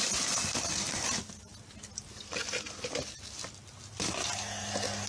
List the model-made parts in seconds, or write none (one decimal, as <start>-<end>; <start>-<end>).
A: none